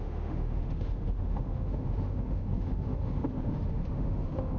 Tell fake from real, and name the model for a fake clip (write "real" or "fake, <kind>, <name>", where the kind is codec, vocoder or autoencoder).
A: fake, autoencoder, DAC-VAE